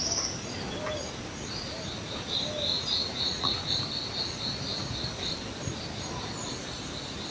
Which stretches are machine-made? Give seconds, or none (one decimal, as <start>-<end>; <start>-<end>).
2.7-3.5